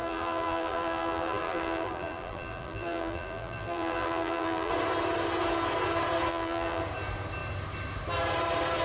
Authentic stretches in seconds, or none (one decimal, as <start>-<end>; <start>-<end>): 4.7-6.3; 6.8-8.8